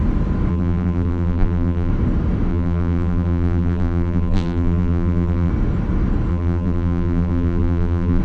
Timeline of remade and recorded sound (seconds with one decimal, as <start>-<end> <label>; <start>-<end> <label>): 0.0-0.5 recorded; 0.5-1.9 remade; 1.9-2.5 recorded; 2.5-5.5 remade; 5.5-6.3 recorded; 6.3-8.2 remade